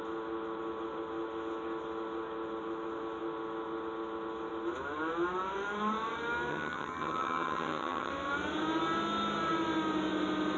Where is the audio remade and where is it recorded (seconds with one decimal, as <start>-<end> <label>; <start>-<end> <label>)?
0.0-6.5 recorded; 6.5-8.1 remade; 8.1-10.6 recorded